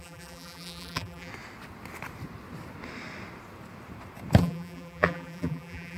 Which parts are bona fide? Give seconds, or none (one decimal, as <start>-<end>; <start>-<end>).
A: 1.3-4.4